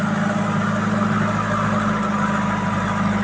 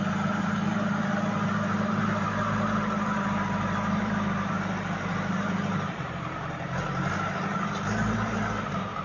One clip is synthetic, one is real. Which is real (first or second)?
first